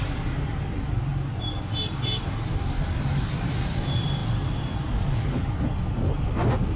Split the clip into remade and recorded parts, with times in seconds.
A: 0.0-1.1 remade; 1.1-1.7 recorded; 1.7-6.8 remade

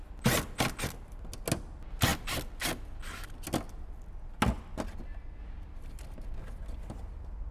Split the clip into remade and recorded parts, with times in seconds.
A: 0.0-7.5 recorded

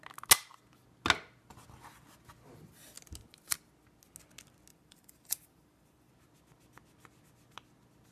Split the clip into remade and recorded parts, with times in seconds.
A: 0.0-4.7 recorded; 4.7-6.1 remade; 6.1-8.1 recorded

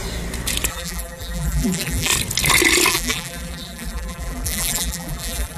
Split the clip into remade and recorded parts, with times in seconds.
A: 0.0-0.7 recorded; 0.7-2.1 remade; 2.1-2.9 recorded; 2.9-5.6 remade